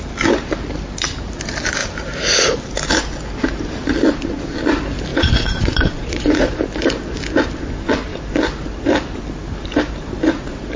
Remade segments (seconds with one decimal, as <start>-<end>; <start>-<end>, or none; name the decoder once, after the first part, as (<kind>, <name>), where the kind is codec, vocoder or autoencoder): 5.1-6.6 (vocoder, Vocos)